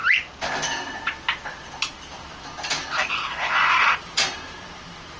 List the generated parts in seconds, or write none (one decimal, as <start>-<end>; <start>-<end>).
3.1-5.2